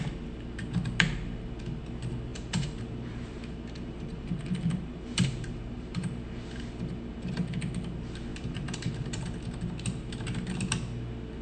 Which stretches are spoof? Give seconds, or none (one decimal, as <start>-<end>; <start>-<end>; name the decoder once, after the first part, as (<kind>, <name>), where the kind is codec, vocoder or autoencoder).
2.3-7.3 (vocoder, BigVGAN v2); 8.3-8.9

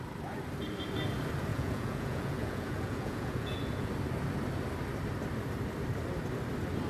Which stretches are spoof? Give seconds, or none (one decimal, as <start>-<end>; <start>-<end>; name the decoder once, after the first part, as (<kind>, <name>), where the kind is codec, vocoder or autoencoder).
1.5-3.9 (vocoder, Vocos)